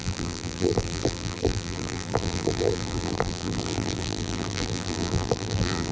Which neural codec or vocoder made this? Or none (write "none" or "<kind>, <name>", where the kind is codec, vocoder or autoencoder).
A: vocoder, BigVGAN v2